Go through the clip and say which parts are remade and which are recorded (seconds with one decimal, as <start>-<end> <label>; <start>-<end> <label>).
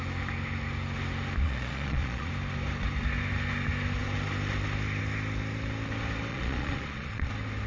0.0-1.4 recorded; 1.4-2.3 remade; 2.3-6.3 recorded; 6.3-7.3 remade; 7.3-7.7 recorded